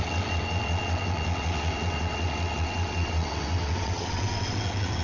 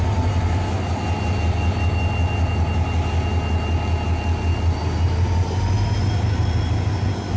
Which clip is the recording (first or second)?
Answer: second